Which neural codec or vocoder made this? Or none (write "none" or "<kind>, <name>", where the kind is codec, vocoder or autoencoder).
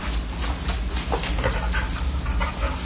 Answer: none